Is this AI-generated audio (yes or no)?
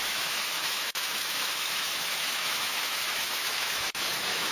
yes